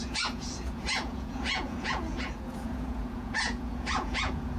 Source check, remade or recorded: remade